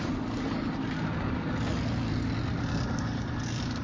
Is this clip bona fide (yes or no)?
yes